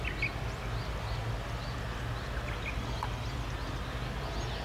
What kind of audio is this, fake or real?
real